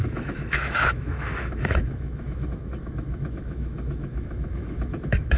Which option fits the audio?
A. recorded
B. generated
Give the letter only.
B